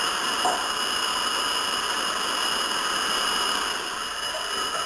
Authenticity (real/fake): real